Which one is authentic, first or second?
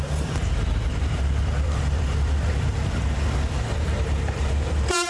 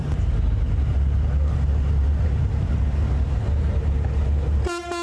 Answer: second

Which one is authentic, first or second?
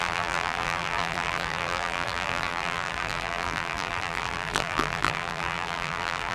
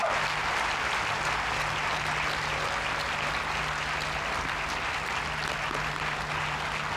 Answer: second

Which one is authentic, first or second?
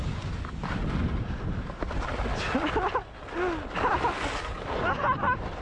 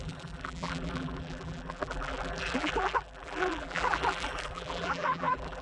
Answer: first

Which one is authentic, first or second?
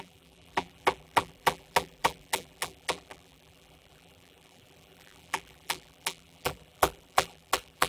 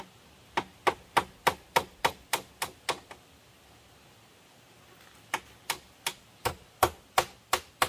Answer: second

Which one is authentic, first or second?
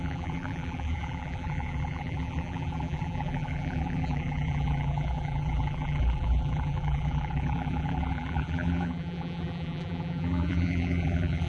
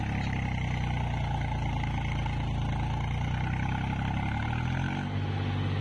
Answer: second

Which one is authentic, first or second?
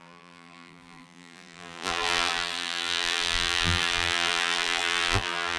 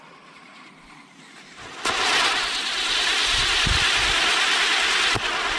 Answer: second